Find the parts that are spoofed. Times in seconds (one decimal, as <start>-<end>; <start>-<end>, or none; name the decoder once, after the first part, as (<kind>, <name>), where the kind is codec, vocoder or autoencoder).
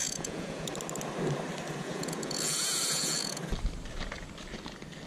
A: 0.0-0.7 (vocoder, Vocos); 1.8-3.4